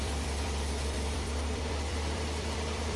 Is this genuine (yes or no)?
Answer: no